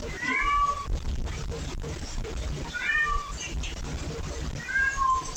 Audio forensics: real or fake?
fake